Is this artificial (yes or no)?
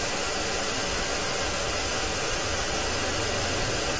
no